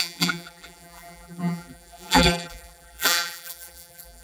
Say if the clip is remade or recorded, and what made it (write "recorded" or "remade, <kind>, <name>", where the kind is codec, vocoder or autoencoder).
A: remade, vocoder, BigVGAN v2